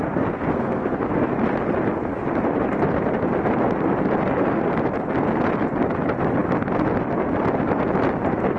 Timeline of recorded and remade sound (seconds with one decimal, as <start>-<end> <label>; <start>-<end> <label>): 0.0-0.5 recorded; 0.5-1.1 remade; 1.1-8.6 recorded